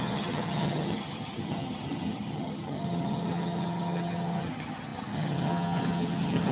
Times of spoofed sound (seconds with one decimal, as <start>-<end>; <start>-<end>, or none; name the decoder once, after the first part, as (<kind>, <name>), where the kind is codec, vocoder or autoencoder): 0.0-6.5 (vocoder, HiFi-GAN)